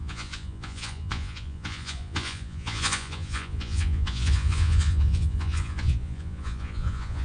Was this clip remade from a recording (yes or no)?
yes